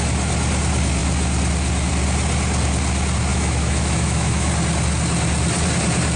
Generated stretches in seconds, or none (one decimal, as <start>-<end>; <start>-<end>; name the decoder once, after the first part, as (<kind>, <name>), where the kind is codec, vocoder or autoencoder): 3.3-4.5 (autoencoder, DAC-VAE)